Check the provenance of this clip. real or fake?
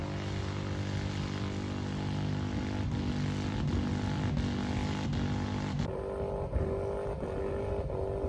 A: real